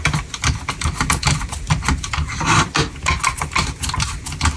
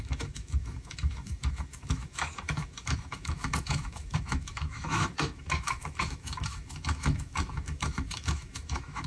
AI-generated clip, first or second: second